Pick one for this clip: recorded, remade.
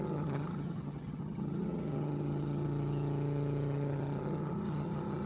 remade